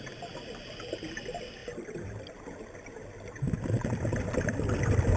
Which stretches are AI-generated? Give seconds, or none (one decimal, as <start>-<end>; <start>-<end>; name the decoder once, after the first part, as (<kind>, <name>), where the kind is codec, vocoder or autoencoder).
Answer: none